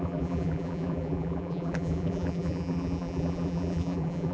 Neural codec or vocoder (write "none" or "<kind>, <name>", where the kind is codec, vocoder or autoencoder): vocoder, BigVGAN v2